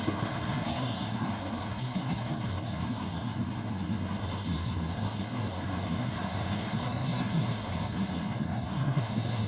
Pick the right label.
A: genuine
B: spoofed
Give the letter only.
B